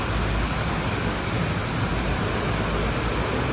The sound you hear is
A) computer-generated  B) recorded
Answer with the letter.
B